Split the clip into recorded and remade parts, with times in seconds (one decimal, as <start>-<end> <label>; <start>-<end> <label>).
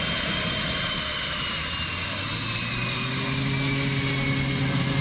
0.0-5.0 recorded